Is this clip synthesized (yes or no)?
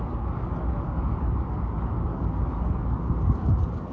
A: yes